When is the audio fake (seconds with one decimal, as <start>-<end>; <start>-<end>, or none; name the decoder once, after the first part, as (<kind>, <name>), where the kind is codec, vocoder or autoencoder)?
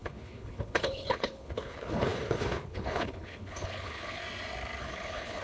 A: 0.0-4.2 (codec, HILCodec); 4.8-5.4